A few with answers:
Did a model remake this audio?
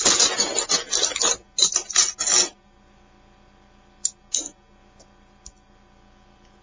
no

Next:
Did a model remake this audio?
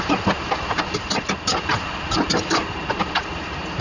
no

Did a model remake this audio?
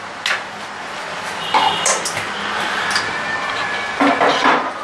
no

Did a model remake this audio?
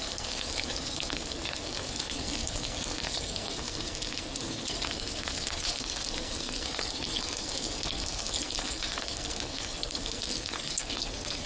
yes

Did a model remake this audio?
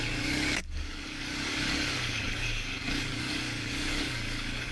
yes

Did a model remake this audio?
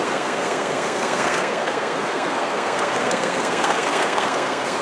yes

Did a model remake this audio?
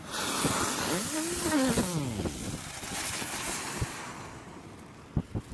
no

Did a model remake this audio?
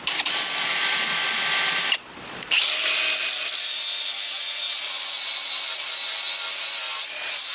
no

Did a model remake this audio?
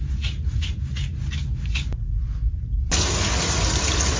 no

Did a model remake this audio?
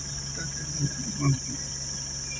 no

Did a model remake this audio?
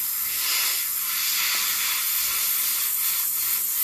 no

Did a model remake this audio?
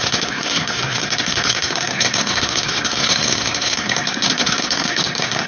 yes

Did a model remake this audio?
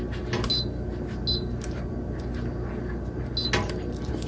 no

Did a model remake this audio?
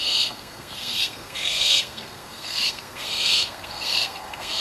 yes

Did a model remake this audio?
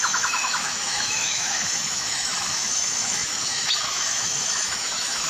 yes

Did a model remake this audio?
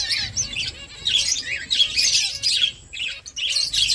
no